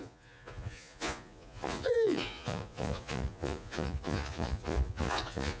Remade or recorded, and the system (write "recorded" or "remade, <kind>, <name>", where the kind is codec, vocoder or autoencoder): remade, vocoder, Vocos